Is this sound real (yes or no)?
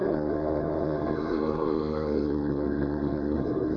no